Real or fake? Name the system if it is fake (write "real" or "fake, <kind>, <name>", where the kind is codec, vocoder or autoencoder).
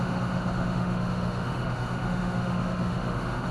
fake, autoencoder, DAC-VAE